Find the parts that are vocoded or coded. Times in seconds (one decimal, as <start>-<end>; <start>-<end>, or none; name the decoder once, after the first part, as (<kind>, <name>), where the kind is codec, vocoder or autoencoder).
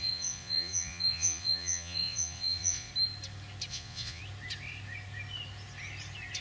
0.0-2.9 (vocoder, Vocos); 3.7-4.2